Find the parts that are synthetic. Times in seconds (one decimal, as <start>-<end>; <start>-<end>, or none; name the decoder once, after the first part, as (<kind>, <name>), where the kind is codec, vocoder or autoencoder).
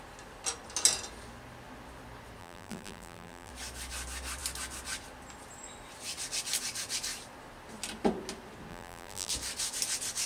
2.4-3.5 (vocoder, BigVGAN v2); 8.7-9.3